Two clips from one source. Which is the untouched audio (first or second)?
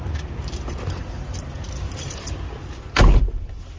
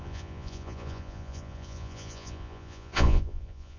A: first